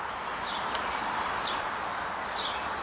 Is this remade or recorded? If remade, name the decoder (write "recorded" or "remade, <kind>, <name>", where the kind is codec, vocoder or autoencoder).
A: recorded